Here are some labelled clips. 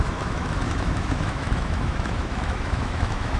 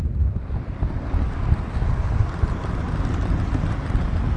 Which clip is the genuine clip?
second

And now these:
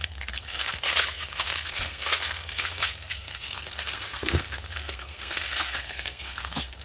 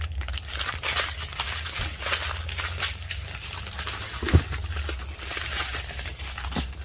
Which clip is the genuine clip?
second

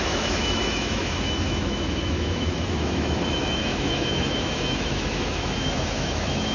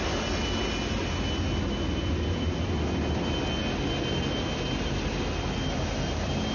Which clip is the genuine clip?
second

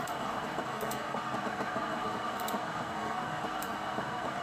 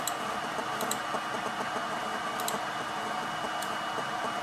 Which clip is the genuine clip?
second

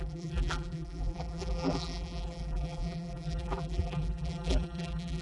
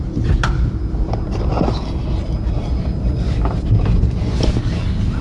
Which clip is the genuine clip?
second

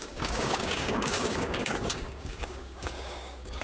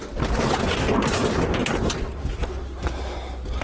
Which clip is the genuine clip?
second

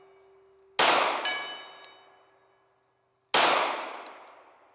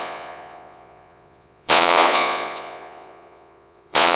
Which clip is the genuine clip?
first